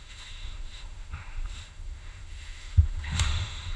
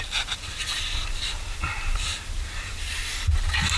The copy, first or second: first